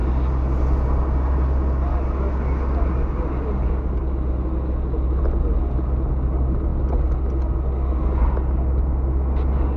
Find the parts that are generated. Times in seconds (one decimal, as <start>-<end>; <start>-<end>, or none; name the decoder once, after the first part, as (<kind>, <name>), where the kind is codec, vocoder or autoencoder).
none